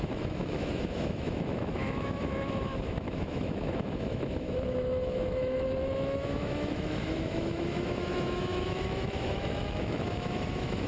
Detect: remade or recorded remade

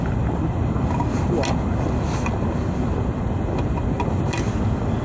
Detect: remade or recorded recorded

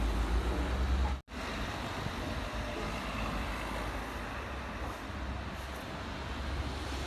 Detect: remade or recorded recorded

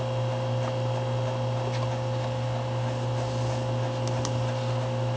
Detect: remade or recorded recorded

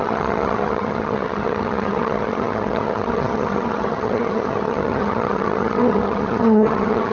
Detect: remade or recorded remade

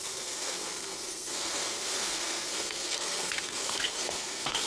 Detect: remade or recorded remade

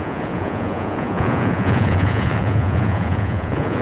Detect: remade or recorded remade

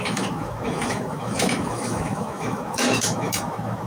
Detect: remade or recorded remade